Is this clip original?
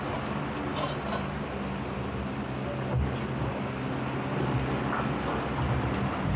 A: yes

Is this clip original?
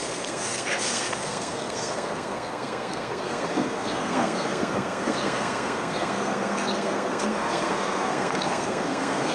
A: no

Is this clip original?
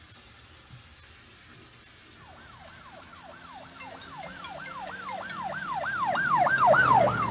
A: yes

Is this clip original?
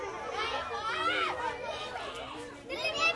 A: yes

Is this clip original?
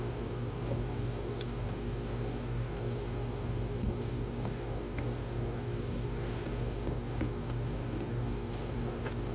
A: no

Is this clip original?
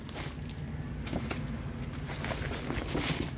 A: yes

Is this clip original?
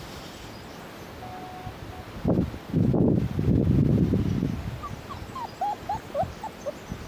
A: yes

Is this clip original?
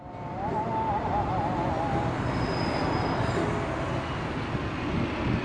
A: yes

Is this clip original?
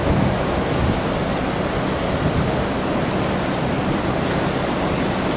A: yes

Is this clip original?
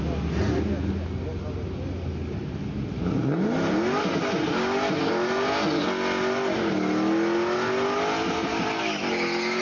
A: yes